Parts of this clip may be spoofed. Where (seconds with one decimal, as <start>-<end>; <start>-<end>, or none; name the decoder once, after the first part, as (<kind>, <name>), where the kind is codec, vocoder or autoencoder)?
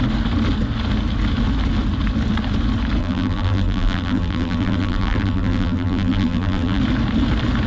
3.0-6.8 (vocoder, BigVGAN v2)